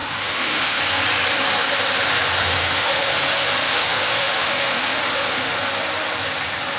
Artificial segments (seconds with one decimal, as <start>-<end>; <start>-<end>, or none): 0.0-0.8; 2.4-3.1; 3.6-5.6